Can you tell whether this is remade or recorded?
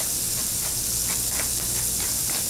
recorded